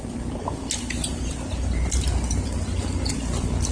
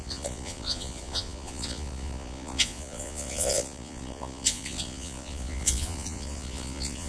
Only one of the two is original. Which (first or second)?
first